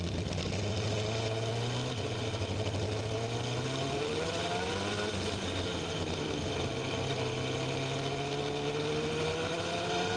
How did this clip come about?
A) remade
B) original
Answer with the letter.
B